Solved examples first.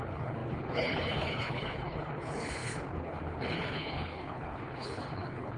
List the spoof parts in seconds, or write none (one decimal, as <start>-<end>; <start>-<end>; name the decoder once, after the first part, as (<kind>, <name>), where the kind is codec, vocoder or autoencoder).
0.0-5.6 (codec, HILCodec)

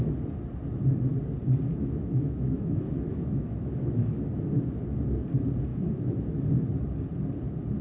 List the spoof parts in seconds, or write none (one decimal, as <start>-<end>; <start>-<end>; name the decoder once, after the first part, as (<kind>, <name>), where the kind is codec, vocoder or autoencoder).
1.7-4.3 (autoencoder, DAC-VAE); 5.7-6.2

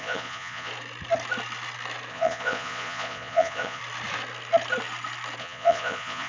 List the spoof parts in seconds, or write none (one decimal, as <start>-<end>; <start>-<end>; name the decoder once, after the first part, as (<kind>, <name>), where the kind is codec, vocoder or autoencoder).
0.0-0.7 (vocoder, Vocos); 2.1-3.8; 5.4-6.3

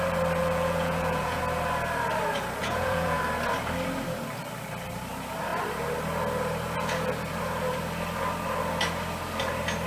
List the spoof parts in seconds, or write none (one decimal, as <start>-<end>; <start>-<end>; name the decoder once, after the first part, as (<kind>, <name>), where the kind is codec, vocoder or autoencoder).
0.4-1.4 (vocoder, Vocos); 2.6-3.2